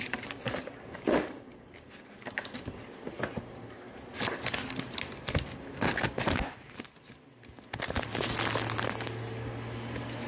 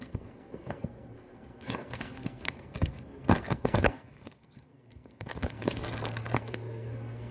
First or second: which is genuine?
first